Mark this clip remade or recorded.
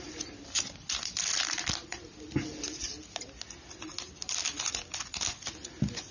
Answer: recorded